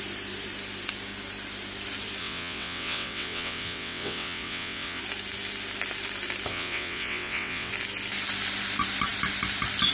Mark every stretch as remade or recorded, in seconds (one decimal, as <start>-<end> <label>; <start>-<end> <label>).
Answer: 0.0-2.2 recorded; 2.2-5.0 remade; 5.0-6.5 recorded; 6.5-7.7 remade; 7.7-9.9 recorded